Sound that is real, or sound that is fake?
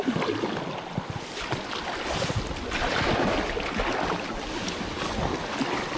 real